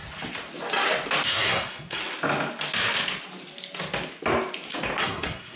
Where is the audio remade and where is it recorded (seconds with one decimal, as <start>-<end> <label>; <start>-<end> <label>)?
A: 0.0-1.3 recorded; 1.3-2.0 remade; 2.0-5.0 recorded; 5.0-5.6 remade